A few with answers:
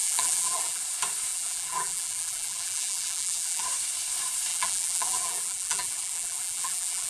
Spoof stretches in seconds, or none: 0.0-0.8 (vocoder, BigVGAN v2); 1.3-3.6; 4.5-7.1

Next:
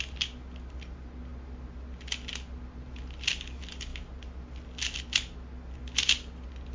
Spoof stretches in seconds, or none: none